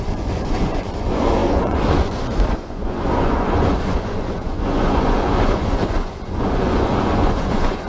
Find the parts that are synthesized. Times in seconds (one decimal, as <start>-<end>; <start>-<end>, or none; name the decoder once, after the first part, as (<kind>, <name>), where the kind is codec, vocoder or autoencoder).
0.0-7.9 (vocoder, Vocos)